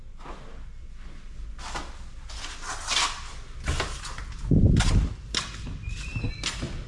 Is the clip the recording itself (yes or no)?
yes